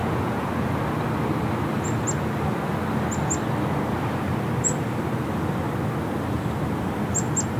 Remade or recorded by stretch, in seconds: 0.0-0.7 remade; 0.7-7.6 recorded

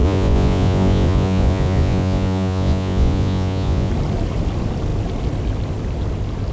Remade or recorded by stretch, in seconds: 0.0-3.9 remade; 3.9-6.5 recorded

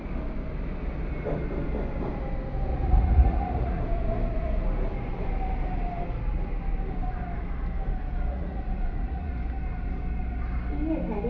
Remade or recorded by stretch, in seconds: 0.0-2.7 recorded; 2.7-3.8 remade; 3.8-8.3 recorded; 8.3-9.3 remade; 9.3-11.3 recorded

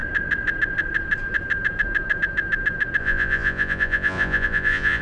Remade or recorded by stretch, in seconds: 0.0-3.0 recorded; 3.0-5.0 remade

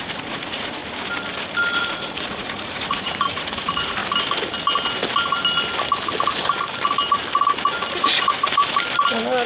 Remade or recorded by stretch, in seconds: 0.0-0.8 remade; 0.8-1.7 recorded; 1.7-4.0 remade; 4.0-8.0 recorded; 8.0-8.6 remade; 8.6-9.5 recorded

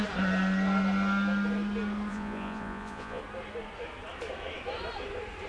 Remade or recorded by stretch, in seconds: 0.0-2.1 recorded; 2.1-3.2 remade; 3.2-5.5 recorded